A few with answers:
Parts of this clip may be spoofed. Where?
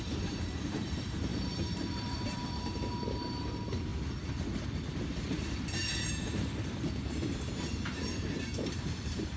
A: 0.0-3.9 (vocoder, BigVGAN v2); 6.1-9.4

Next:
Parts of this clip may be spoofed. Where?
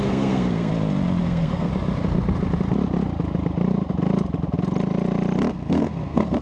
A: 0.0-0.7 (codec, SNAC); 1.2-1.7; 5.5-6.4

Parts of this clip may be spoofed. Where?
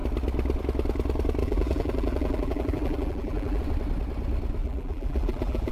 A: 1.4-3.6 (vocoder, BigVGAN v2); 4.6-5.7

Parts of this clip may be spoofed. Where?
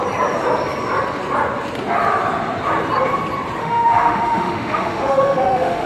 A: 3.6-5.9 (autoencoder, DAC-VAE)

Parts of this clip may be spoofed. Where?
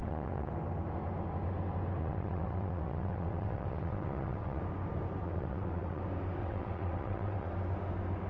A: 0.0-0.5 (vocoder, WaveNeXt); 2.0-4.6; 5.2-6.0; 6.4-7.5